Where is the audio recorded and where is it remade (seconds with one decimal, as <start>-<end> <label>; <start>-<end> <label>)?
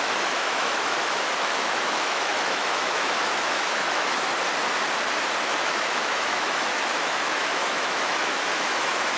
0.0-4.3 remade; 4.3-5.4 recorded; 5.4-9.2 remade